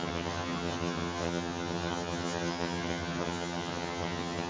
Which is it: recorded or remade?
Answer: remade